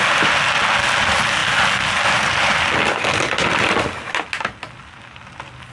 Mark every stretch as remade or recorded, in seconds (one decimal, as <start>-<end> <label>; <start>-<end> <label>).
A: 0.0-5.7 recorded

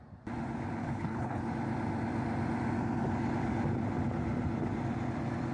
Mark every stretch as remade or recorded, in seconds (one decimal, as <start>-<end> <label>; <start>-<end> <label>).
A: 0.0-0.8 recorded; 0.8-1.4 remade; 1.4-5.5 recorded

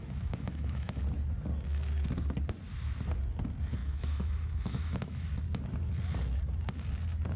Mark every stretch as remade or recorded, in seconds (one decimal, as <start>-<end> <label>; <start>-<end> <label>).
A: 0.0-1.0 remade; 1.0-3.8 recorded; 3.8-5.3 remade; 5.3-7.4 recorded

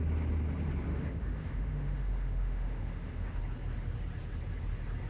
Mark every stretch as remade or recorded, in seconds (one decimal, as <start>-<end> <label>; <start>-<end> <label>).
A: 0.0-0.9 recorded; 0.9-3.4 remade; 3.4-5.1 recorded

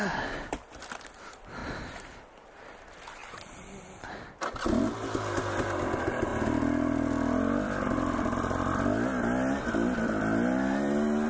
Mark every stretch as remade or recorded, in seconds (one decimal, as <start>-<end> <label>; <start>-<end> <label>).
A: 0.0-1.6 recorded; 1.6-2.6 remade; 2.6-3.2 recorded; 3.2-4.1 remade; 4.1-11.3 recorded

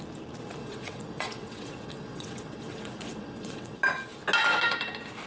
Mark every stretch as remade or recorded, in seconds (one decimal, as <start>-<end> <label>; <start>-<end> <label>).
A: 0.0-0.6 recorded; 0.6-3.8 remade; 3.8-5.3 recorded

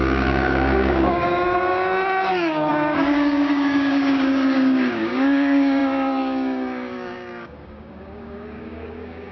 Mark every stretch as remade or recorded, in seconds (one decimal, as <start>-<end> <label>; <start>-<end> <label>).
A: 0.0-9.3 remade

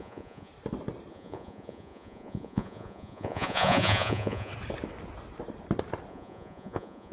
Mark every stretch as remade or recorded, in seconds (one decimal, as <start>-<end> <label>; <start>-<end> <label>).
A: 0.0-0.5 remade; 0.5-1.1 recorded; 1.1-4.5 remade; 4.5-6.1 recorded; 6.1-7.1 remade